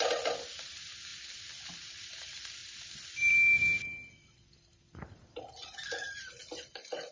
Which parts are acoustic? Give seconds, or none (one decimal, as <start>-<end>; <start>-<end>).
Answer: 0.0-7.1

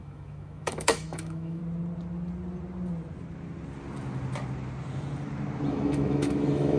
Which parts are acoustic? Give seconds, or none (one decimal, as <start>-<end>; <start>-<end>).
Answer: 1.6-5.7

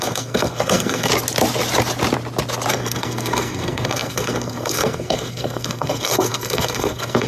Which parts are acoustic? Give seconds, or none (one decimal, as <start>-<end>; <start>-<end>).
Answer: 1.1-2.7

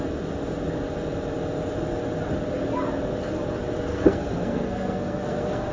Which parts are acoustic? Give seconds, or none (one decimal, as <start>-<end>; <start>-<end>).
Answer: 0.0-3.9

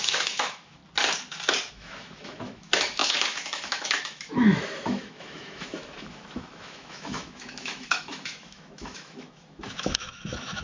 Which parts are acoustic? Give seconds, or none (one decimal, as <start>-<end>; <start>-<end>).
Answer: 0.8-1.7

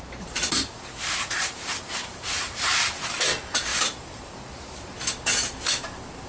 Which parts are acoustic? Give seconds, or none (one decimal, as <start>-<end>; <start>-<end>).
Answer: 0.0-1.0; 3.0-3.7; 4.3-6.3

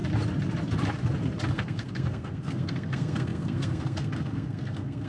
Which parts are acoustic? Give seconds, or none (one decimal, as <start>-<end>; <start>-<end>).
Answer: 0.0-1.5